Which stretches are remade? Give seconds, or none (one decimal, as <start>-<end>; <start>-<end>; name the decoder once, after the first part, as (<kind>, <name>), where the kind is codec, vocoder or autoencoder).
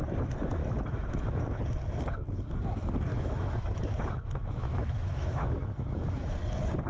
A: 0.6-1.6 (autoencoder, DAC-VAE); 3.1-6.3